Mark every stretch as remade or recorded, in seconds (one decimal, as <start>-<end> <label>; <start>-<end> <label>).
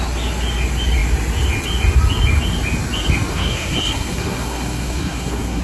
0.0-3.3 recorded; 3.3-5.6 remade